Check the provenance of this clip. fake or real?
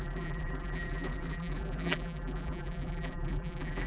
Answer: fake